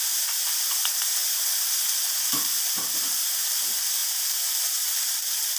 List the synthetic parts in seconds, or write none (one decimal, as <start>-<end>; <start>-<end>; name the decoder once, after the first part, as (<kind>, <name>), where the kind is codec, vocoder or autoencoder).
none